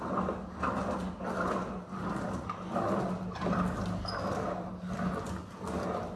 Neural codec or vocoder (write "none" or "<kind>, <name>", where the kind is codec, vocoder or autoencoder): none